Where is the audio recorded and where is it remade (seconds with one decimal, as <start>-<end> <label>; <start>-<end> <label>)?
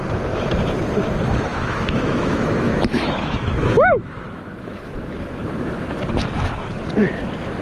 0.0-1.5 recorded; 1.5-5.9 remade; 5.9-7.6 recorded